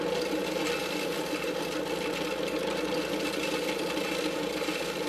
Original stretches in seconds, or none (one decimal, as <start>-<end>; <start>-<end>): 0.0-5.1